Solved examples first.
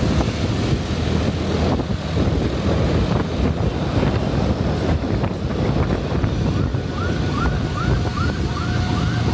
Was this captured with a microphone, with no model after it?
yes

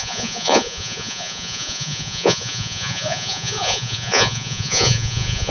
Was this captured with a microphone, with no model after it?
no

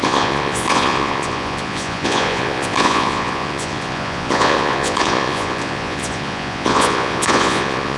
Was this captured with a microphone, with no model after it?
no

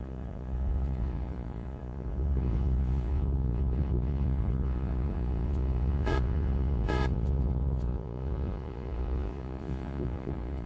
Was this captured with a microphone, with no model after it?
no